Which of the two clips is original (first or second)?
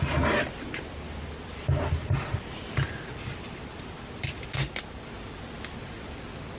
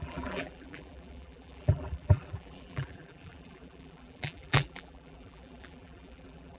first